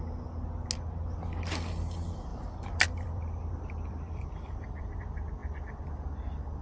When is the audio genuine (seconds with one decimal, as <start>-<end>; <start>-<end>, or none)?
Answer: 0.0-2.3; 5.0-5.4